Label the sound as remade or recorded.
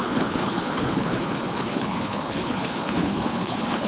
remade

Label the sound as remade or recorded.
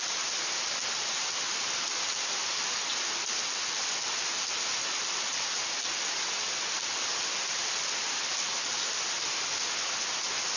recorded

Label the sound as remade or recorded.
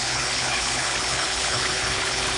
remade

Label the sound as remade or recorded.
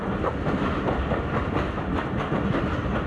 recorded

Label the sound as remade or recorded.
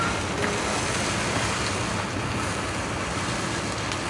recorded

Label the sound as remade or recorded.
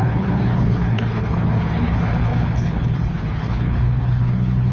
remade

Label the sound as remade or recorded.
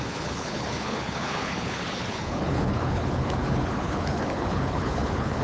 remade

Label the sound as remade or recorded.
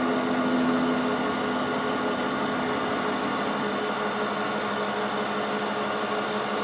recorded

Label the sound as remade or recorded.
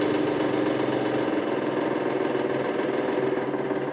recorded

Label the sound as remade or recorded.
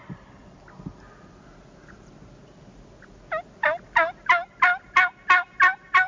recorded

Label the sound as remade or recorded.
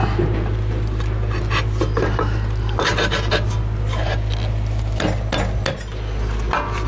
recorded